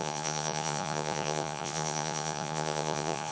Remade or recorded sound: remade